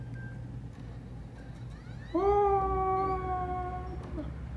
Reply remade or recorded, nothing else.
recorded